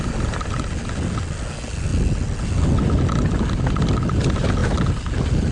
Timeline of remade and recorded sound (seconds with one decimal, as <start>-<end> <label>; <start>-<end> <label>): 0.0-5.5 recorded